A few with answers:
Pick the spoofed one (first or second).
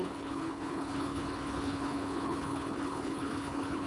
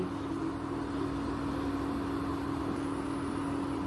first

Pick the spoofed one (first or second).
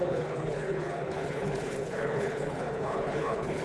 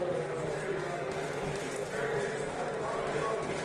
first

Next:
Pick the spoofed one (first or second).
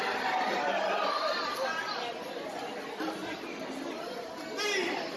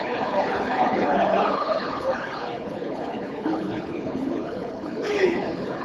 second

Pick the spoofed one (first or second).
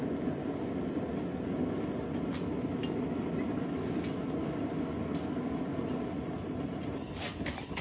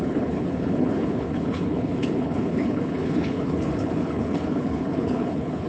second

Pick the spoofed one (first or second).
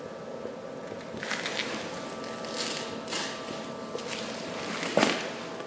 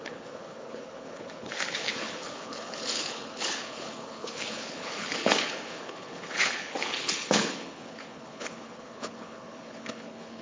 second